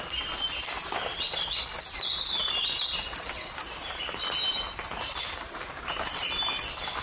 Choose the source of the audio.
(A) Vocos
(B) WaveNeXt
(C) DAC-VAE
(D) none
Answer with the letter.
D